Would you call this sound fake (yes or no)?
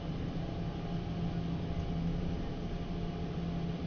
no